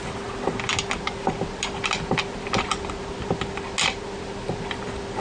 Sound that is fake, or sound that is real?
real